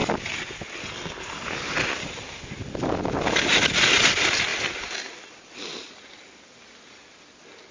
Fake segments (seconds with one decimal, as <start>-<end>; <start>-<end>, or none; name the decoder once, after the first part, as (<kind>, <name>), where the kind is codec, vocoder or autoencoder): none